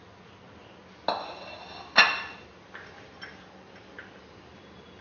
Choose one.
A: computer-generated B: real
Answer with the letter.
B